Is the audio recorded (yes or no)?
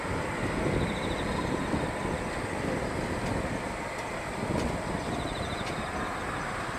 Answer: yes